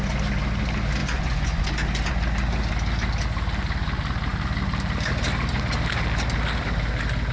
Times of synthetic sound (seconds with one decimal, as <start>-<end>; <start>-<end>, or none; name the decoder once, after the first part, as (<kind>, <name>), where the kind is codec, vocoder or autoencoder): 1.0-1.6 (vocoder, Vocos)